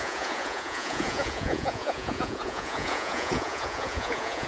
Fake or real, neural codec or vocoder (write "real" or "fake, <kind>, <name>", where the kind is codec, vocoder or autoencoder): fake, vocoder, Vocos